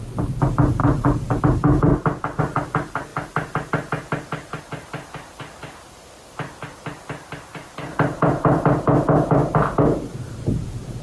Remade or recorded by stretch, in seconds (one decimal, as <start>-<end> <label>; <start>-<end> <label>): 0.0-0.8 remade; 0.8-1.4 recorded; 1.4-1.9 remade; 1.9-2.4 recorded; 2.4-3.1 remade; 3.1-4.6 recorded; 4.6-11.0 remade